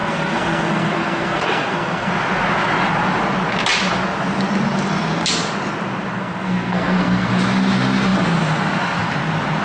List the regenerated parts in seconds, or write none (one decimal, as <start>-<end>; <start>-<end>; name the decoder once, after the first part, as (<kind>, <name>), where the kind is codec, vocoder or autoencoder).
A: 0.0-2.1 (codec, SNAC); 6.1-7.3